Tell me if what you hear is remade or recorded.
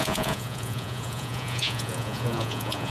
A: remade